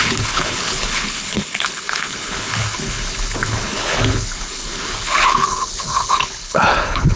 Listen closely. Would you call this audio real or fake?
fake